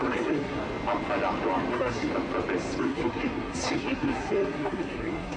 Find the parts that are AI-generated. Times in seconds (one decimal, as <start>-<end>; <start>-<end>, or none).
0.0-0.6; 1.7-2.1; 2.8-5.4